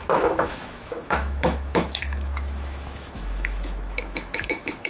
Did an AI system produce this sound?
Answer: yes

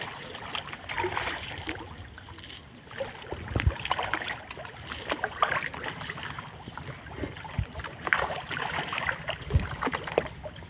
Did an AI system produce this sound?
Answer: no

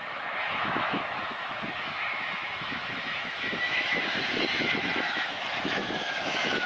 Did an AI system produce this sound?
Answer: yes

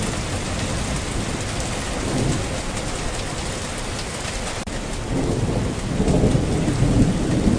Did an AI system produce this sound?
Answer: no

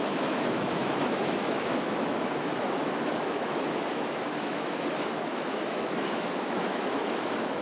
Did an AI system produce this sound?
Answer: yes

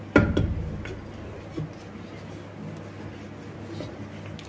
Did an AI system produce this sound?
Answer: no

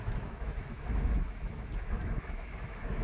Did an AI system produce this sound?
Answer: yes